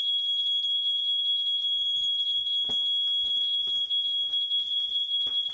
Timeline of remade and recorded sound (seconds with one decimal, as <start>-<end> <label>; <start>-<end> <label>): 0.0-2.4 remade; 2.4-3.3 recorded; 3.3-5.5 remade